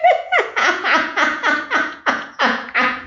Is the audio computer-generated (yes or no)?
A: yes